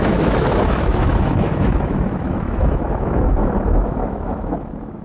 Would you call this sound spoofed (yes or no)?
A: yes